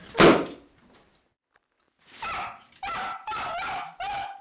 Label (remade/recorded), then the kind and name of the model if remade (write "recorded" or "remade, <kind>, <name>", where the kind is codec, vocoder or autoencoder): recorded